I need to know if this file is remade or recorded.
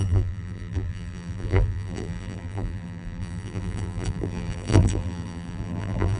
remade